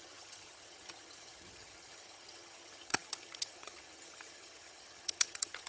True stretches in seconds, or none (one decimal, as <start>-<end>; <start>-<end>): none